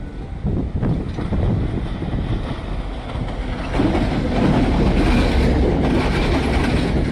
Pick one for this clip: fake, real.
real